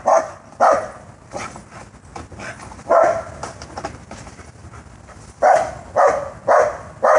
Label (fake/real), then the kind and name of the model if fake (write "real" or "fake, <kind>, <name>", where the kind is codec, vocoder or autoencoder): real